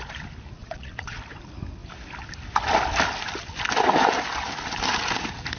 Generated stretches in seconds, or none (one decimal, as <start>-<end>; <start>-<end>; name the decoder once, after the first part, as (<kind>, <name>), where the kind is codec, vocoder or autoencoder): 0.6-1.2 (vocoder, Vocos)